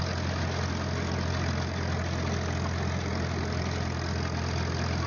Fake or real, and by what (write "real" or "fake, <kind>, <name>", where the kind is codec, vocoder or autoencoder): real